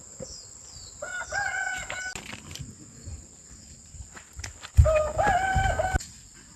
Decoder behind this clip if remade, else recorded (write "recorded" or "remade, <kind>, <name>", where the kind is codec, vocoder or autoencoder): recorded